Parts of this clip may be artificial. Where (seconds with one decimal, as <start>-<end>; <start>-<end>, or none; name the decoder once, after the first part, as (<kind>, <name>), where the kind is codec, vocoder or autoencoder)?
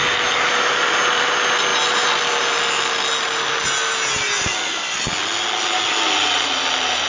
none